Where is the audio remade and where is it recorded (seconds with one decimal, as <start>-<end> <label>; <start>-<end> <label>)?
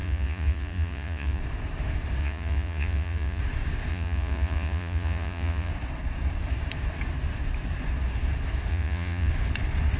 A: 0.0-1.4 remade; 1.4-2.2 recorded; 2.2-3.4 remade; 3.4-3.9 recorded; 3.9-5.7 remade; 5.7-8.7 recorded; 8.7-9.3 remade; 9.3-10.0 recorded